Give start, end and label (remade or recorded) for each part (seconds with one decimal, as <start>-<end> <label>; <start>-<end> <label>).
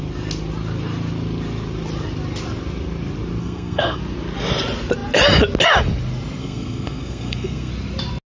0.0-3.4 recorded; 3.4-4.0 remade; 4.0-6.4 recorded; 6.4-7.7 remade; 7.7-8.4 recorded